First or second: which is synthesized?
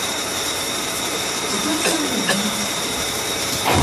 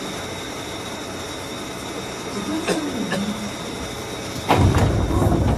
first